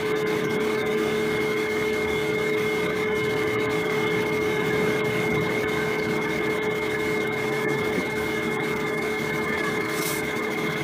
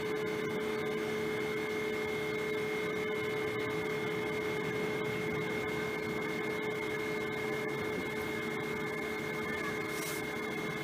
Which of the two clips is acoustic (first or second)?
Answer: second